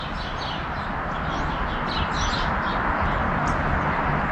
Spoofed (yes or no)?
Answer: no